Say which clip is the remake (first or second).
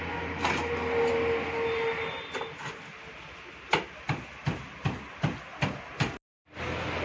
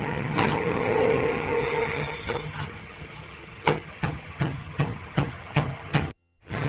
second